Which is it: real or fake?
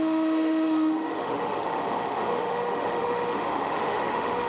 fake